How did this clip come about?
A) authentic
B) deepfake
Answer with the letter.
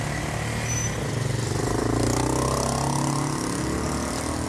A